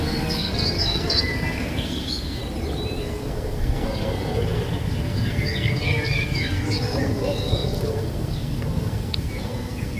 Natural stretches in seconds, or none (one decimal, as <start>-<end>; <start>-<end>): 2.4-3.0